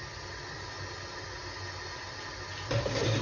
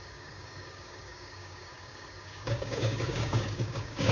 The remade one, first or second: second